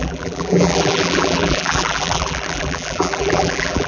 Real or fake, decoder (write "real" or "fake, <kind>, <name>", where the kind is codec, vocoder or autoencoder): fake, vocoder, BigVGAN v2